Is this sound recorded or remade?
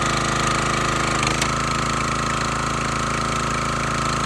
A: recorded